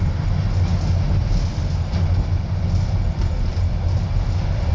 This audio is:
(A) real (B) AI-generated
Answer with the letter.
A